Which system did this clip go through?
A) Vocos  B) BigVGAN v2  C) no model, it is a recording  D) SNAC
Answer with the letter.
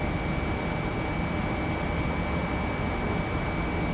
C